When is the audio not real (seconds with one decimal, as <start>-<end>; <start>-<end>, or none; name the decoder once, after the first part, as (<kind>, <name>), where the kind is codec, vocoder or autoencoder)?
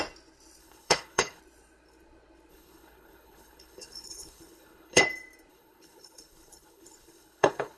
0.6-1.4 (codec, HILCodec); 2.5-5.0; 5.5-7.8